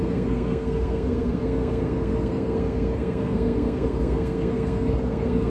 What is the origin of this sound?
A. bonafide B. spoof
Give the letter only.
B